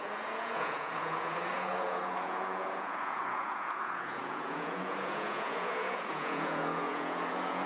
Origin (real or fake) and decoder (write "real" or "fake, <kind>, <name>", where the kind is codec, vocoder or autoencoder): fake, vocoder, Vocos